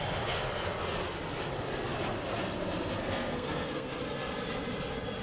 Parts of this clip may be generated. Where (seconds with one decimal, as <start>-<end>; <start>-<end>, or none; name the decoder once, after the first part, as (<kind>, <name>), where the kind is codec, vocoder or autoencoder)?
3.0-4.0 (codec, SNAC)